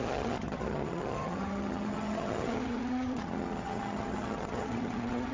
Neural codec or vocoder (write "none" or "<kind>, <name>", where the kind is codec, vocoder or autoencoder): vocoder, HiFi-GAN